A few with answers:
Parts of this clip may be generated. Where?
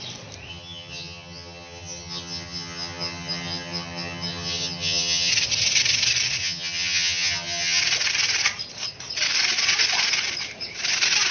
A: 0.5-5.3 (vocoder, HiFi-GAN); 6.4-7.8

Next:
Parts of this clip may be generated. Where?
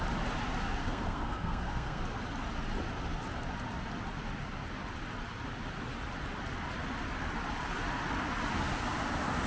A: 0.8-2.0 (codec, SNAC)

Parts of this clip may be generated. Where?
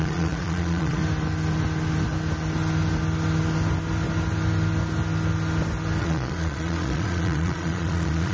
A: 0.0-1.0 (vocoder, Vocos); 6.0-8.3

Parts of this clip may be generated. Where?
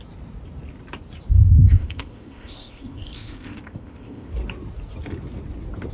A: 1.3-4.3 (codec, ZipCodec)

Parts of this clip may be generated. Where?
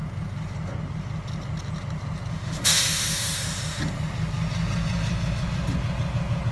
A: 2.3-3.8 (autoencoder, DAC-VAE)